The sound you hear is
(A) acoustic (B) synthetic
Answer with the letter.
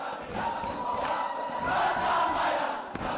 A